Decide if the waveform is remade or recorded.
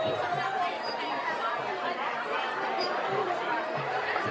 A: remade